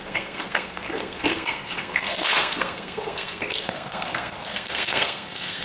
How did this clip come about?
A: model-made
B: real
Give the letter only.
A